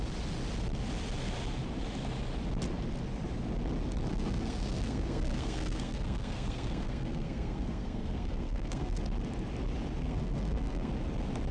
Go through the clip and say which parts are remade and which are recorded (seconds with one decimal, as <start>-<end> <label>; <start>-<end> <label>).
0.0-4.1 recorded; 4.1-9.0 remade; 9.0-10.0 recorded; 10.0-10.9 remade; 10.9-11.5 recorded